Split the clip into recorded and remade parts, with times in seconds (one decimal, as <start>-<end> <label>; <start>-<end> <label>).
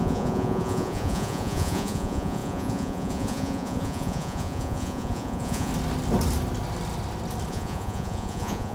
0.0-5.7 remade; 5.7-7.5 recorded; 7.5-8.7 remade